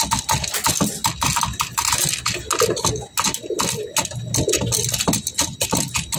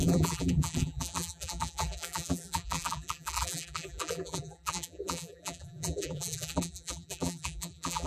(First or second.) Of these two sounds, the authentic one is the first